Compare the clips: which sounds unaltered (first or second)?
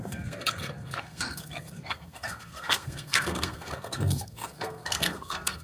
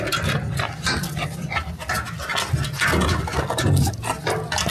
second